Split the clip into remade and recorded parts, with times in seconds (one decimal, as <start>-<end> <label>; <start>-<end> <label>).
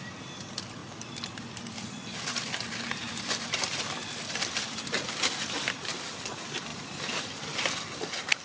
0.0-0.8 recorded; 0.8-4.4 remade; 4.4-6.7 recorded; 6.7-7.6 remade; 7.6-8.4 recorded